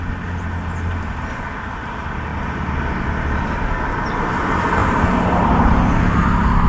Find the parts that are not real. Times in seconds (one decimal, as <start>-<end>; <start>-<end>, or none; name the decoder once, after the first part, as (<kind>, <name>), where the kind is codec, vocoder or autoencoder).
none